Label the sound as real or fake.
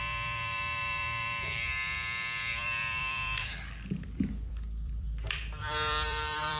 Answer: fake